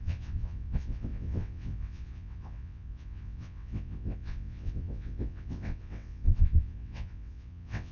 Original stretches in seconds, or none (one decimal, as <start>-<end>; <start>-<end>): none